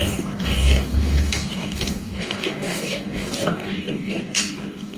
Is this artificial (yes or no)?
yes